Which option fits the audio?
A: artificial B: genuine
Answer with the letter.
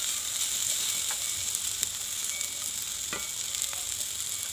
B